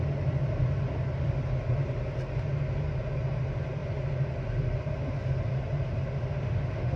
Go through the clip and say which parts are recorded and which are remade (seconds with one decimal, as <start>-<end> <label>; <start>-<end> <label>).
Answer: 0.0-6.3 recorded; 6.3-7.0 remade